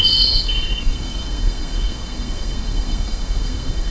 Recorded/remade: remade